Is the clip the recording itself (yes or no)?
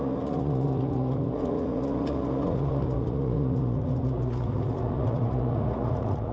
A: no